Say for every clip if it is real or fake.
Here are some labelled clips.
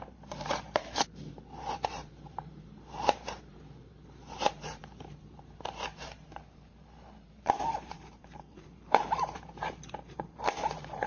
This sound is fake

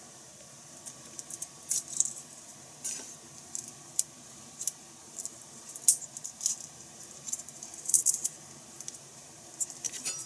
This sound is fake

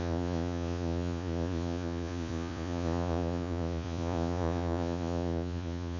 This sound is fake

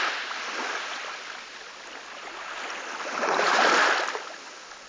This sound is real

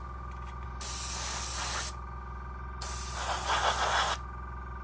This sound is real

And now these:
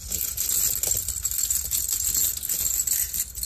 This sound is real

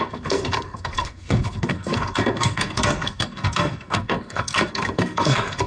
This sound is fake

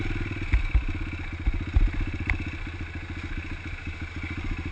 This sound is real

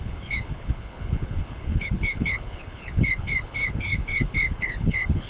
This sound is fake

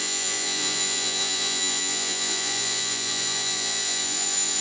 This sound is fake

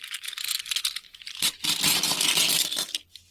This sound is real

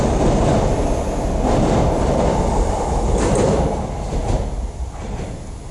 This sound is real